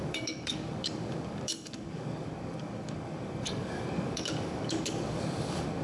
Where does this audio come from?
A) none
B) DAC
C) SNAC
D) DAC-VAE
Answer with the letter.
B